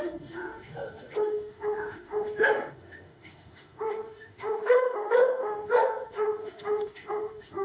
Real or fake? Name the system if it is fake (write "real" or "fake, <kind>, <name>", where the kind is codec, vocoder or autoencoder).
fake, autoencoder, DAC-VAE